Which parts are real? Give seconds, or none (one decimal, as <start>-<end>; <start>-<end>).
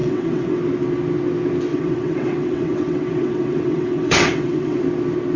0.6-1.7; 4.8-5.4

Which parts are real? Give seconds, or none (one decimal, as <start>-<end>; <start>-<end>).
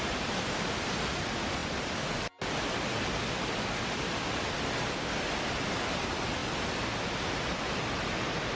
0.0-8.6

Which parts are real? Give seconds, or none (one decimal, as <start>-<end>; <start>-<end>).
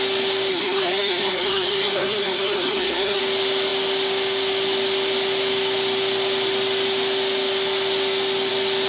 0.0-0.5; 3.2-8.9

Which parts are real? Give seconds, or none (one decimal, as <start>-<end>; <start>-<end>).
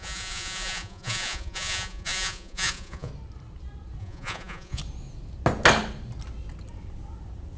3.1-4.0; 4.8-7.6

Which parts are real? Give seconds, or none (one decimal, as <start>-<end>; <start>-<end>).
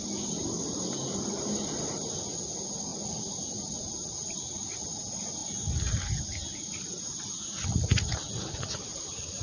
0.0-9.4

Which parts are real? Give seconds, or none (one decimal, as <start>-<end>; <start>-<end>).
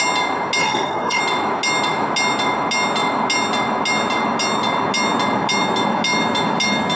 0.0-0.6; 1.2-7.0